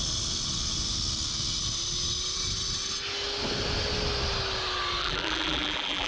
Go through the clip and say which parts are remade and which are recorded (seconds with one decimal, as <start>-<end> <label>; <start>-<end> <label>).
0.0-5.0 recorded; 5.0-6.1 remade

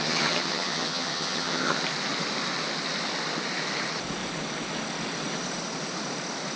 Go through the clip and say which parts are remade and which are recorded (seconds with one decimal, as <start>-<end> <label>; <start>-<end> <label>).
0.0-1.8 remade; 1.8-6.6 recorded

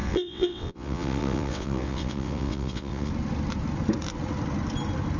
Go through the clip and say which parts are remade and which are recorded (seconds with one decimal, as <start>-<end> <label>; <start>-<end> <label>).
0.0-3.1 remade; 3.1-5.2 recorded

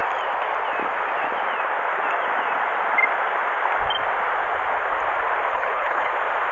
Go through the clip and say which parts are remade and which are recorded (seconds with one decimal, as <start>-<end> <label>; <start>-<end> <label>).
0.0-5.5 recorded; 5.5-6.1 remade; 6.1-6.5 recorded

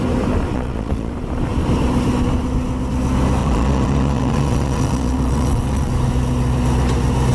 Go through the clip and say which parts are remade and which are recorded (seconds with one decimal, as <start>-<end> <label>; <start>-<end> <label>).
0.0-0.5 recorded; 0.5-1.1 remade; 1.1-3.4 recorded; 3.4-5.9 remade; 5.9-7.3 recorded

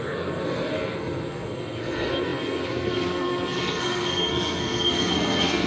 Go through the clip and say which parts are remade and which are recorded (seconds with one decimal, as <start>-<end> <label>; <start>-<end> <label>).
0.0-5.7 remade

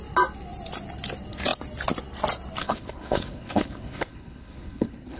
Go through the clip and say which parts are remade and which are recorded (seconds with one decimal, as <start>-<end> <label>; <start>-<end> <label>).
0.0-2.6 recorded; 2.6-5.2 remade

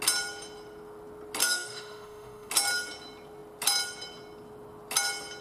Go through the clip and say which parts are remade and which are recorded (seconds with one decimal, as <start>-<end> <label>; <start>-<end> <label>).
0.0-1.4 recorded; 1.4-2.5 remade; 2.5-5.4 recorded